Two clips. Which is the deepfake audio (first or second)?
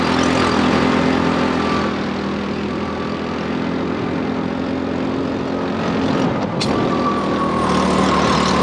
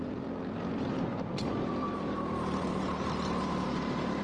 second